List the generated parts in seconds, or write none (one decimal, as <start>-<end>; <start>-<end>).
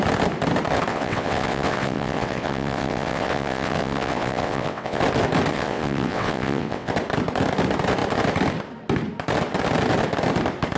0.9-5.0; 5.5-6.9